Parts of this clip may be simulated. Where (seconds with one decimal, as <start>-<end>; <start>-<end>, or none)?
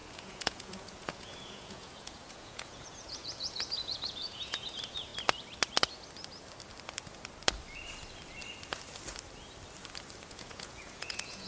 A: 0.0-5.1; 10.3-11.5